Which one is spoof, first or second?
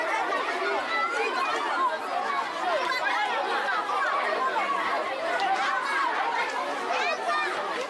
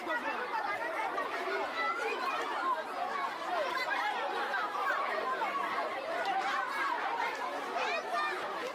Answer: second